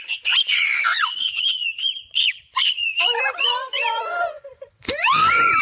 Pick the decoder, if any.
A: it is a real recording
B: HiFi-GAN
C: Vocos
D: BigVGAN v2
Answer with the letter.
C